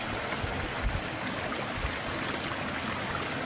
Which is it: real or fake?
real